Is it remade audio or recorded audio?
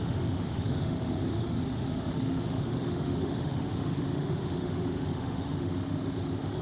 remade